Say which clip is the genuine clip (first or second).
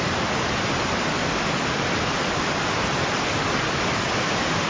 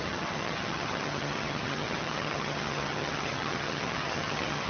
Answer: first